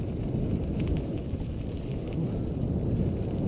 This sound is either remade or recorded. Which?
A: recorded